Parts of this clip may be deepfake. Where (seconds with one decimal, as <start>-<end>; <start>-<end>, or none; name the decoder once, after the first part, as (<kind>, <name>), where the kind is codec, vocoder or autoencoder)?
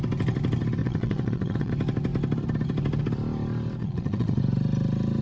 0.8-1.7 (vocoder, Vocos); 3.8-4.4